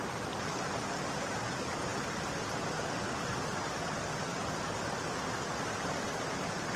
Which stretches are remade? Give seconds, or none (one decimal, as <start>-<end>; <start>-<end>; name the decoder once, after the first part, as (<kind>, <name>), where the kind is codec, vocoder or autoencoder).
none